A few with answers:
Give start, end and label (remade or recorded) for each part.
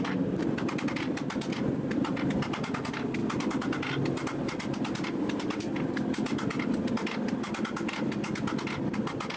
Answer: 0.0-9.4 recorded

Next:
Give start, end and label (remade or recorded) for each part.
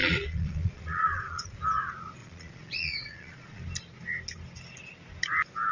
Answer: 0.0-1.6 remade; 1.6-2.2 recorded; 2.2-3.6 remade; 3.6-5.7 recorded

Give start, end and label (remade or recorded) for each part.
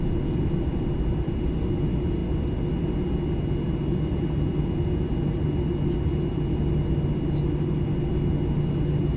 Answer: 0.0-9.2 recorded